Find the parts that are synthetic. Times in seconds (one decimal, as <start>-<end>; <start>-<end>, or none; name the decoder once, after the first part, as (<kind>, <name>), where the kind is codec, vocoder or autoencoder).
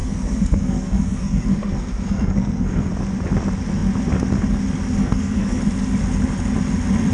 0.0-2.9 (codec, SNAC); 5.0-5.6